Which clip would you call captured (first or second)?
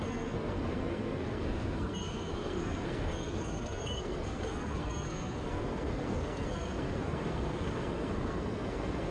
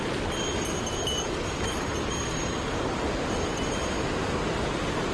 second